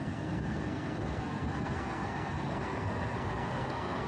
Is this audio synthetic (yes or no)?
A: yes